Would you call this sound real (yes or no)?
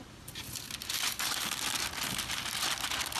yes